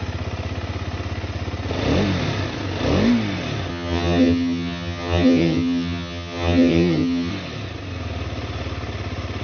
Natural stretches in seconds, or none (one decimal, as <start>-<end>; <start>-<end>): 0.0-3.7; 7.3-9.4